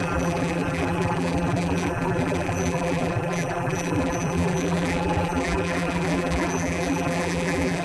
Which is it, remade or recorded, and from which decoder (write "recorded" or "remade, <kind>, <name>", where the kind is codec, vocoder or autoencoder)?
remade, vocoder, BigVGAN v2